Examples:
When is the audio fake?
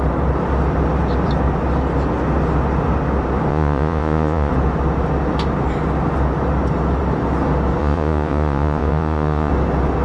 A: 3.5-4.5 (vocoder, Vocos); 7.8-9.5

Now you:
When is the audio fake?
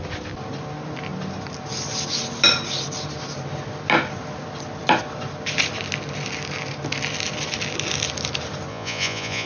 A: 8.7-9.5 (vocoder, Vocos)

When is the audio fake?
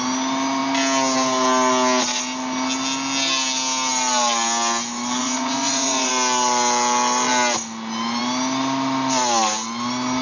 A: 5.2-6.1 (vocoder, Vocos)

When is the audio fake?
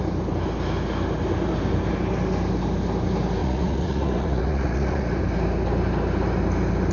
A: 3.4-5.2 (vocoder, Vocos)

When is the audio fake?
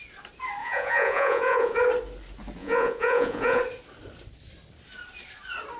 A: 0.6-1.8 (vocoder, Vocos); 2.6-3.6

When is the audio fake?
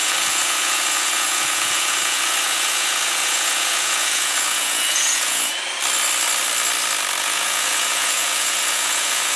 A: 0.0-5.5 (vocoder, Vocos); 7.2-9.4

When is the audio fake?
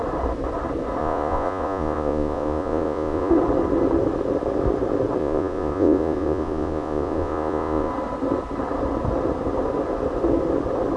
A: 1.0-3.3 (vocoder, Vocos); 5.2-7.9